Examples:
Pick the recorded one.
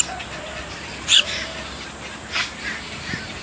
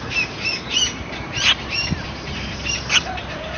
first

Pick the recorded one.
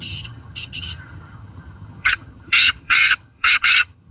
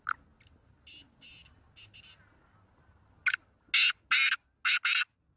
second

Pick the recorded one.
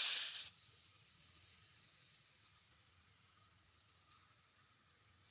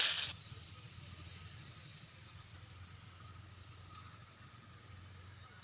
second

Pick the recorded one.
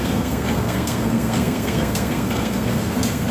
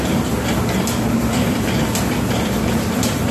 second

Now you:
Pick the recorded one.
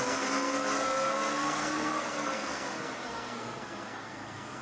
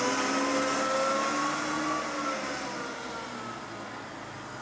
second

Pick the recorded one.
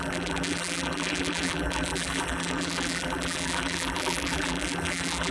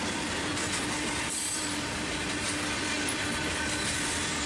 second